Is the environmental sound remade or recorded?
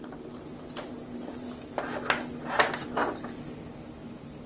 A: recorded